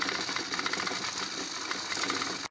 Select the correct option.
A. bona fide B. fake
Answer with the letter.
A